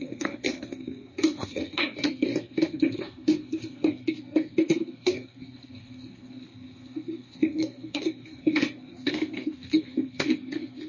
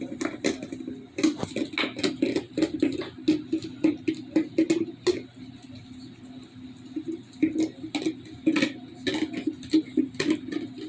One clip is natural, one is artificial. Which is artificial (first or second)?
first